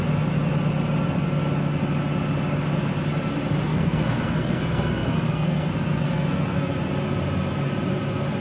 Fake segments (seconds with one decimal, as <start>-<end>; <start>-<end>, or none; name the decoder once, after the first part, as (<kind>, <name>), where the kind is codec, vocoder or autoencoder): 3.7-6.7 (codec, SNAC)